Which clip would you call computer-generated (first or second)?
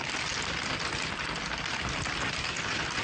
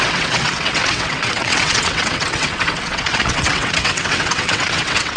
second